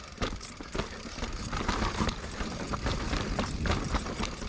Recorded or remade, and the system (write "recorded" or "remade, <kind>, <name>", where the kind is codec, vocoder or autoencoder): remade, vocoder, BigVGAN v2